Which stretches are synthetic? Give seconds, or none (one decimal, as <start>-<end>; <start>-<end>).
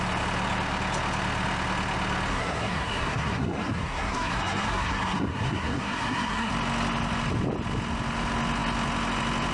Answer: 2.3-6.5